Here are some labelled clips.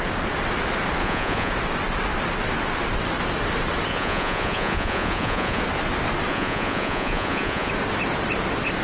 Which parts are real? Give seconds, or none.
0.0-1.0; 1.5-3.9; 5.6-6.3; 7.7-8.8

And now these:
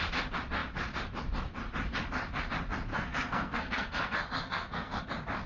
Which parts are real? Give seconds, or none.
0.0-2.9; 5.0-5.5

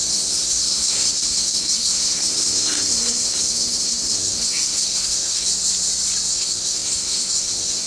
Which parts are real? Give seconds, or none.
5.5-6.3